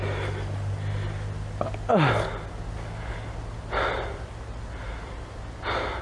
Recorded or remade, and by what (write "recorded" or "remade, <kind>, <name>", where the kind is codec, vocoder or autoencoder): recorded